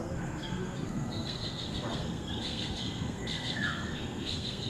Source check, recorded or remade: remade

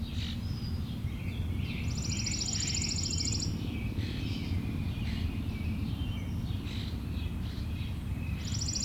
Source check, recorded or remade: recorded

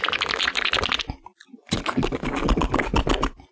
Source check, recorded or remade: recorded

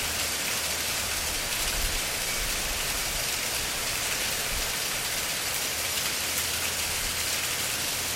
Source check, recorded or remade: recorded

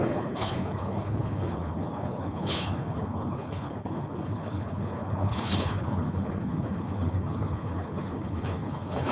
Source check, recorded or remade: remade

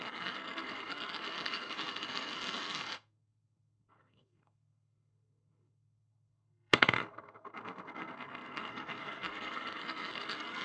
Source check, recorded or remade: remade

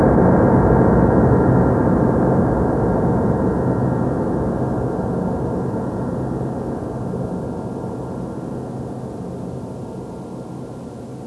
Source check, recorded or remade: recorded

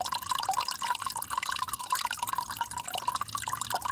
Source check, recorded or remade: recorded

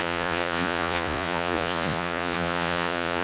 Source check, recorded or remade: remade